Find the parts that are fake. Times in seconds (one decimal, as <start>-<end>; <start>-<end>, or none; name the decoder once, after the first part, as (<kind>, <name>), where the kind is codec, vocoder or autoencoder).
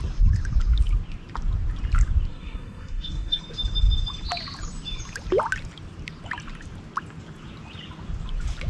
2.3-3.4 (codec, SNAC)